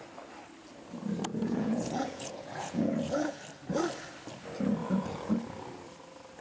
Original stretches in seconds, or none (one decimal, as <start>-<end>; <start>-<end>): 0.0-1.3; 3.4-4.8; 5.3-6.4